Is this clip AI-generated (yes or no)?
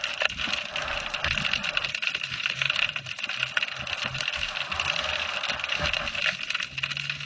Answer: no